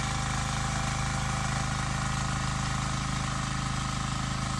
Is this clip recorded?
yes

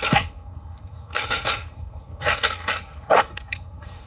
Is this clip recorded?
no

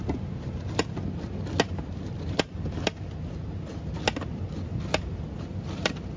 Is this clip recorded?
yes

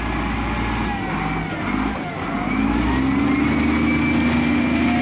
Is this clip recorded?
yes